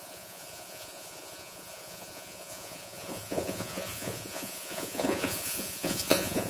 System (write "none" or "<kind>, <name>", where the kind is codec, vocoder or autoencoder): vocoder, Vocos